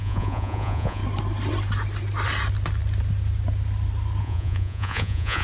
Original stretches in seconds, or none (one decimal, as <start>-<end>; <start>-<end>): 1.0-4.2